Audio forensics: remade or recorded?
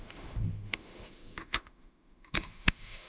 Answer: remade